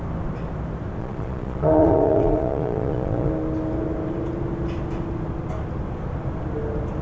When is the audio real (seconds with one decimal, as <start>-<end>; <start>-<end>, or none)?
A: 0.0-1.0; 3.3-7.0